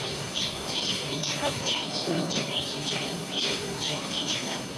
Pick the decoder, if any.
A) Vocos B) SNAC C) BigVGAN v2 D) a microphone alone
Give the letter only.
B